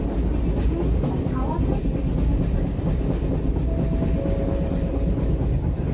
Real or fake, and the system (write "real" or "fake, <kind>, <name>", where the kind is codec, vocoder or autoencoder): real